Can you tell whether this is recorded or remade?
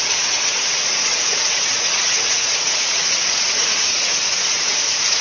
remade